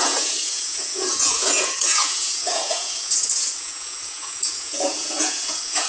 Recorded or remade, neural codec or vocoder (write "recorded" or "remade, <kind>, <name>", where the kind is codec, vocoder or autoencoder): remade, vocoder, Vocos